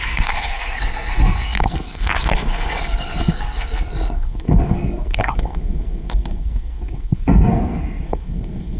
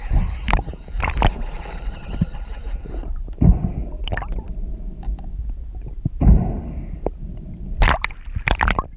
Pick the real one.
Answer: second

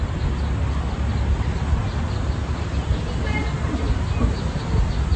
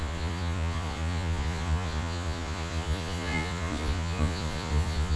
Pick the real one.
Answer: first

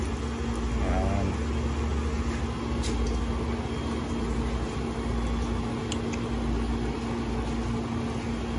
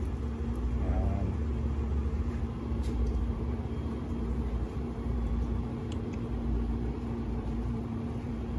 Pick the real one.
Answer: first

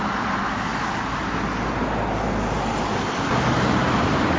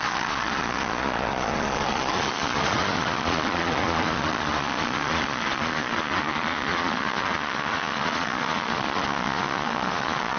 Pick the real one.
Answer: first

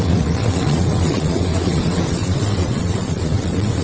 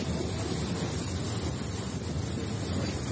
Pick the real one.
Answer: second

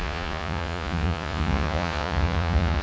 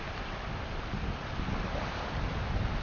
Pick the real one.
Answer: second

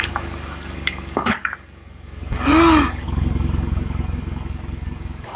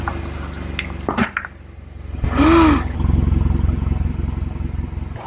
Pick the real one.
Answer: second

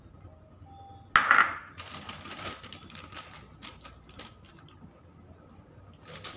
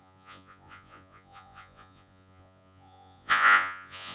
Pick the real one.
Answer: first